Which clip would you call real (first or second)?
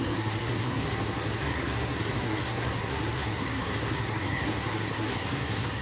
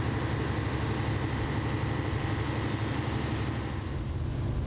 second